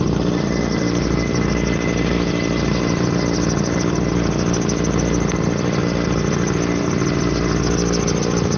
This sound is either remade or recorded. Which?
recorded